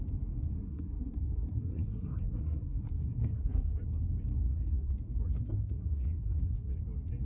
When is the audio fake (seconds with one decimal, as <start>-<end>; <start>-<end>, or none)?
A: 0.5-3.8; 4.4-4.9; 5.4-6.7